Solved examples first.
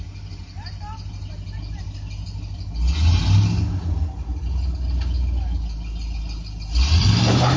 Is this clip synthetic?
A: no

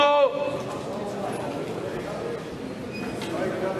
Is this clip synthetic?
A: no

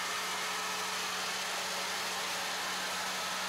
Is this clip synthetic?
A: no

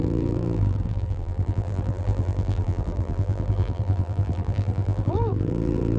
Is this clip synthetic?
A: yes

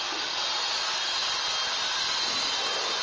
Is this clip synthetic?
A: no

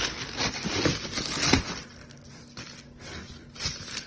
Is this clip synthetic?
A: no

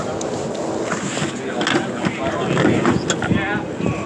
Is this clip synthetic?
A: no